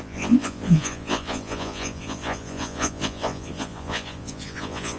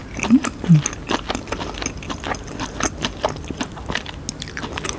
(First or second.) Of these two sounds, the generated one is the first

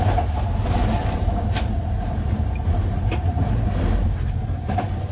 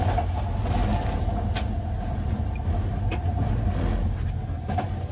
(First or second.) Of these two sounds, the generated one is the first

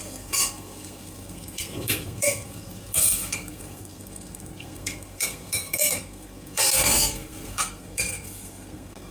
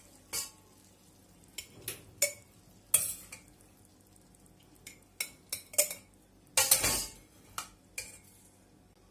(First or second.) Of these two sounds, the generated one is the first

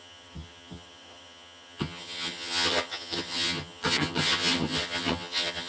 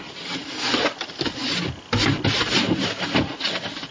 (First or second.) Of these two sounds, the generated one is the first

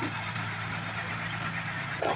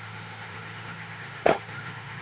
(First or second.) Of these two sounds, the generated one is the second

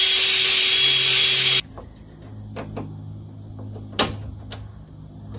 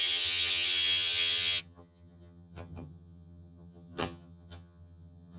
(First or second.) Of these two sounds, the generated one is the second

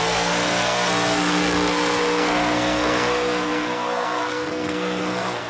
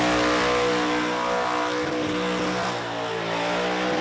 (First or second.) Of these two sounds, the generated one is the first